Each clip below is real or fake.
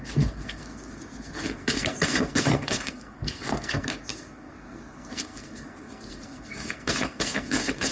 fake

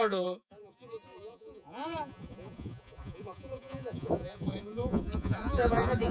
fake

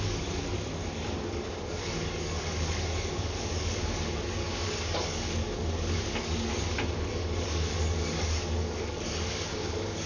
fake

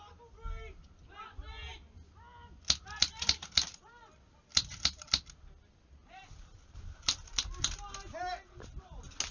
real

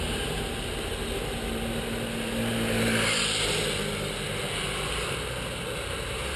real